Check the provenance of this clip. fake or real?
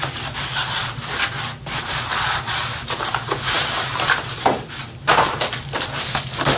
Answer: real